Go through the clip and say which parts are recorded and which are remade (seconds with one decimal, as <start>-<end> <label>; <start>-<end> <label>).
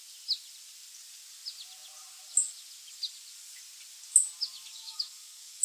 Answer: 0.0-4.7 recorded; 4.7-5.6 remade